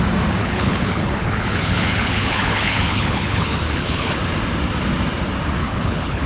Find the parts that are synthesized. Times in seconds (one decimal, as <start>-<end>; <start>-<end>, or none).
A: 0.4-4.2; 5.6-6.3